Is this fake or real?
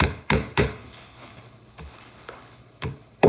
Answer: fake